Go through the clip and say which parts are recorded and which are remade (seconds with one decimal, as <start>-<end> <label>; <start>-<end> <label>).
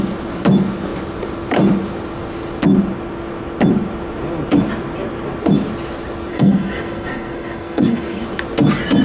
0.0-6.3 recorded; 6.3-8.2 remade; 8.2-9.0 recorded